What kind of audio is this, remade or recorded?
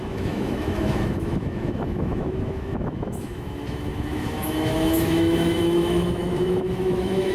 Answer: remade